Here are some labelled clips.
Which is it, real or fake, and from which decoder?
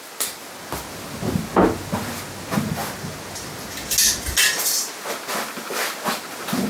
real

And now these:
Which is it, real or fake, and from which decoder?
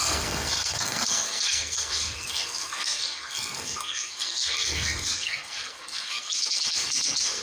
fake, codec, SNAC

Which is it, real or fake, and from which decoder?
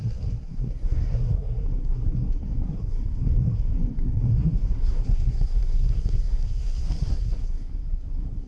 fake, codec, SNAC